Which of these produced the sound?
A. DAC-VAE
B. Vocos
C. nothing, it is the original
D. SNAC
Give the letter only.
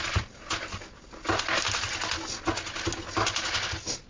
C